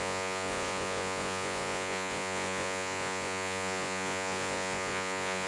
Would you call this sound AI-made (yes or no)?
yes